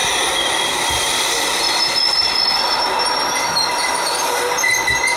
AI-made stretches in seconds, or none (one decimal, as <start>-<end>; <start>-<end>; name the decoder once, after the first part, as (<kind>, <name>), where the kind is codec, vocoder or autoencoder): 0.0-5.2 (vocoder, BigVGAN v2)